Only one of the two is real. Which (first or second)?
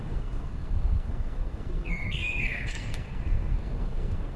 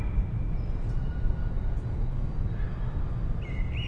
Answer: second